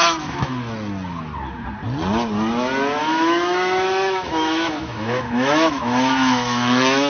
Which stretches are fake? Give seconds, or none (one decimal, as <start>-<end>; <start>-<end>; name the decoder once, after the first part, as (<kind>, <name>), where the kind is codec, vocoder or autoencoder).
0.0-0.5 (autoencoder, DAC-VAE); 3.0-7.1